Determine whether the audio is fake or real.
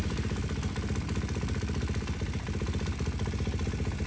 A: real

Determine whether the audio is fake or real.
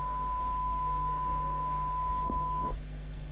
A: fake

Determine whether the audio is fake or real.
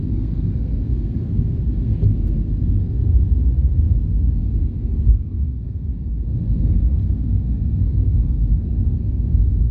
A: fake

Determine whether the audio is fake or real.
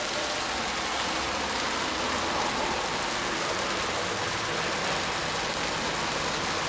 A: real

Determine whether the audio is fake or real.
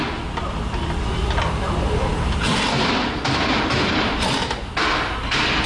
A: real